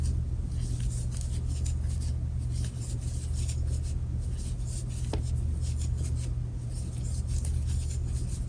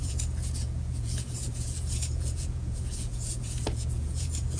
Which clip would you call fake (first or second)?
second